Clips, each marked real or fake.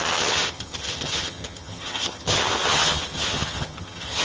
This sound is fake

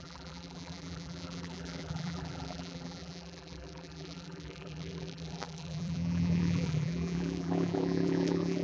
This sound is fake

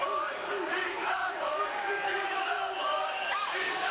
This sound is fake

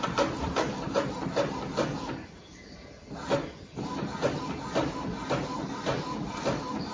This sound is real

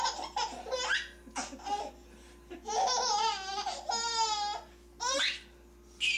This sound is real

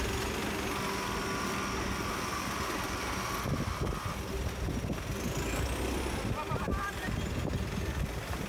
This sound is real